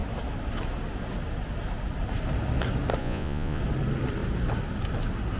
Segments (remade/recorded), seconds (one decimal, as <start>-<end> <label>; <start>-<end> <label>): 0.0-3.0 recorded; 3.0-3.6 remade; 3.6-5.4 recorded